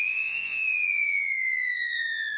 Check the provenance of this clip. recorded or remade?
remade